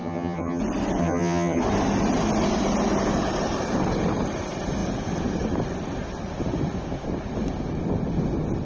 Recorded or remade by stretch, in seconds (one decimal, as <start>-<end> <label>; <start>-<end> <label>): 0.0-0.6 remade; 0.6-1.0 recorded; 1.0-1.6 remade; 1.6-8.7 recorded

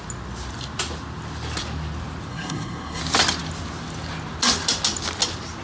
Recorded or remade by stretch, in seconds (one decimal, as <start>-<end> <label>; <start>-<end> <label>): 0.0-2.3 recorded; 2.3-3.0 remade; 3.0-5.6 recorded

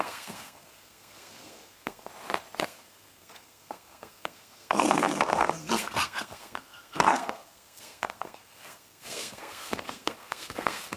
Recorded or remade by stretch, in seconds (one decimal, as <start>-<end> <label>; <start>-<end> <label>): 0.0-2.1 remade; 2.1-2.6 recorded; 2.6-11.0 remade

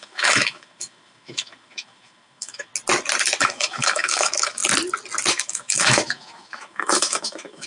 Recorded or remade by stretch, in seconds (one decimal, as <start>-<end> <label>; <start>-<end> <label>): 0.0-2.7 remade; 2.7-3.4 recorded; 3.4-4.6 remade; 4.6-5.3 recorded; 5.3-7.7 remade

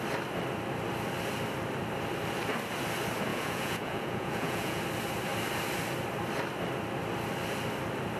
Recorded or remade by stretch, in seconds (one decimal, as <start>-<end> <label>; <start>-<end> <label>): 0.0-3.3 recorded; 3.3-4.8 remade; 4.8-8.2 recorded